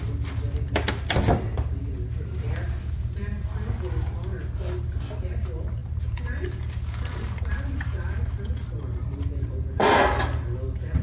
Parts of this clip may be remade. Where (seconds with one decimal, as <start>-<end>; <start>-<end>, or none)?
5.8-8.4